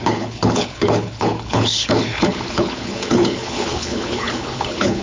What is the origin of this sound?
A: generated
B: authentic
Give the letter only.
A